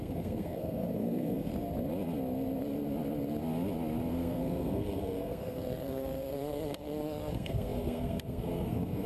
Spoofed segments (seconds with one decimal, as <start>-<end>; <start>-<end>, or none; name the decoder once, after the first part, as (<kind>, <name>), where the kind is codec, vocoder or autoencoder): 0.0-1.5 (codec, SNAC); 4.1-9.1